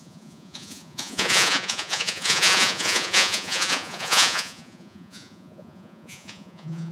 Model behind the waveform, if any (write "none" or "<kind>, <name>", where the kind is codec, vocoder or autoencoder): vocoder, Vocos